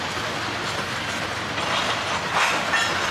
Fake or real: real